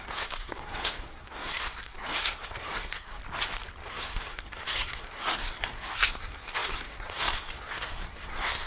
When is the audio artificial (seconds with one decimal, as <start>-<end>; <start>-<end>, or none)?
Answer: 0.0-3.2; 3.9-8.7